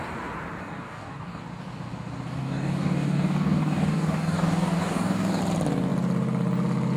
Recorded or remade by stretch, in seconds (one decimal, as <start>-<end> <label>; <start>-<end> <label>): 0.0-0.6 recorded; 0.6-1.4 remade; 1.4-2.4 recorded; 2.4-5.4 remade; 5.4-7.0 recorded